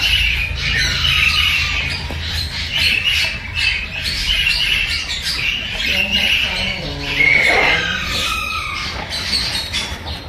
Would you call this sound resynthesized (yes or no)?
yes